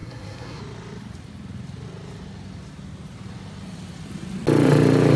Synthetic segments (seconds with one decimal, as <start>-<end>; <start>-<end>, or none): 0.0-0.6